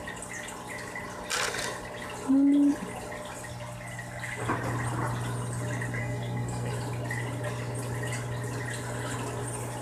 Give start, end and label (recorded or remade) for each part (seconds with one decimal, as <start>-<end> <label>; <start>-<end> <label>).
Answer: 0.0-6.0 recorded; 6.0-6.7 remade; 6.7-9.8 recorded